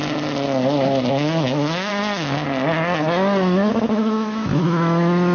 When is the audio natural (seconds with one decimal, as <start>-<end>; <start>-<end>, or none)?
0.0-1.1; 1.9-3.7

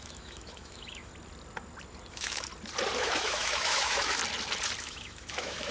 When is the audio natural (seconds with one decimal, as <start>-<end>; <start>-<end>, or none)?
1.1-2.1; 2.5-3.0; 4.2-4.8

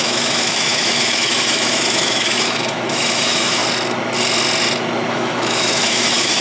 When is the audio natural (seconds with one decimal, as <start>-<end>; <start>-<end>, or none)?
3.6-5.1

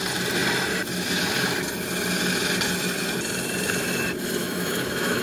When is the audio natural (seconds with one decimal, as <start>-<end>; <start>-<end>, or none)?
0.0-4.4

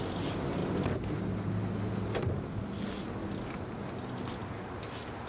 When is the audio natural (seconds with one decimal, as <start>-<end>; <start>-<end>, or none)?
0.0-5.3

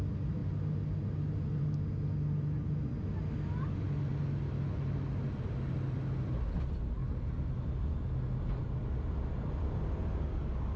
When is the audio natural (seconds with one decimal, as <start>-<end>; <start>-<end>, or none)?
0.0-10.8

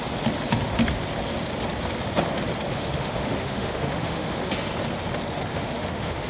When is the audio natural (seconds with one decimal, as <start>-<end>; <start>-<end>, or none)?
0.0-2.7; 4.4-5.5